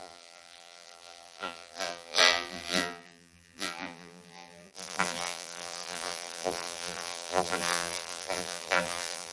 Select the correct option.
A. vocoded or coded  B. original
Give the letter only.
A